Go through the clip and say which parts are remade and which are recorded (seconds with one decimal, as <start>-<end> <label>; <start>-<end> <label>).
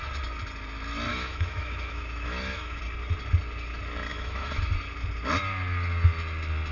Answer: 0.0-1.1 recorded; 1.1-2.8 remade; 2.8-4.1 recorded; 4.1-4.6 remade; 4.6-6.7 recorded